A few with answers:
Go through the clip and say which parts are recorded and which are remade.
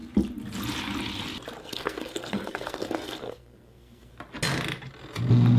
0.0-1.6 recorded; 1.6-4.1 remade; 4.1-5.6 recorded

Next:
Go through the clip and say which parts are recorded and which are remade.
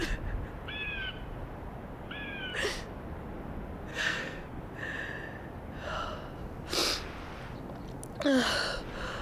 0.0-3.9 recorded; 3.9-4.6 remade; 4.6-9.2 recorded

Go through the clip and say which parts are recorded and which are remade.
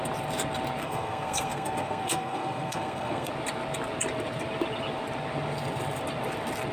0.0-0.8 recorded; 0.8-3.3 remade; 3.3-6.7 recorded